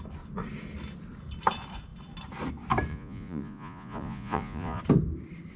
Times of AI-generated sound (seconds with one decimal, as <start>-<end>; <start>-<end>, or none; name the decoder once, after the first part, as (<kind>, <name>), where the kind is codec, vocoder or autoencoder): 2.9-4.8 (vocoder, Vocos)